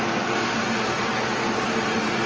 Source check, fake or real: real